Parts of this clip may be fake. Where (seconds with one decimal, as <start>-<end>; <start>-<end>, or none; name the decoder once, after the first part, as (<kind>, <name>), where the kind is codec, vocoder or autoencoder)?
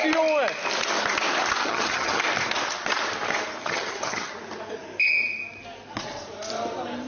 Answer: 1.6-2.2 (vocoder, HiFi-GAN); 3.6-4.3